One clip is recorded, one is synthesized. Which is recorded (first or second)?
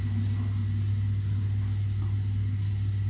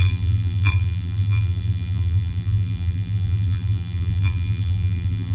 first